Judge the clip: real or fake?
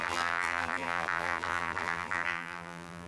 fake